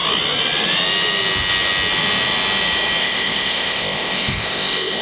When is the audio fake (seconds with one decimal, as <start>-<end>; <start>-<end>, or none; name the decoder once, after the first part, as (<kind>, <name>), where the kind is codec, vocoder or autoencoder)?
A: 3.0-5.0 (codec, ZipCodec)